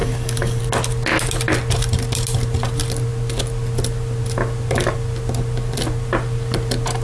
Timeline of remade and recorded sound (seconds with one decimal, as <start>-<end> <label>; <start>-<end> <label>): 0.0-0.6 remade; 0.6-7.0 recorded